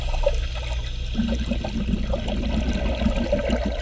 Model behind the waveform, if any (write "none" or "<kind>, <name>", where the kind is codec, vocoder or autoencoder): none